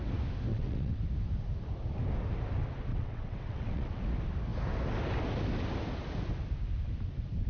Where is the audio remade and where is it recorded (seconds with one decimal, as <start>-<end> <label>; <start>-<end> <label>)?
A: 0.0-0.5 recorded; 0.5-1.0 remade; 1.0-2.9 recorded; 2.9-4.0 remade; 4.0-7.5 recorded